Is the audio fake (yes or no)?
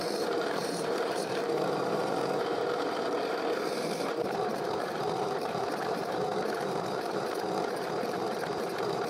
yes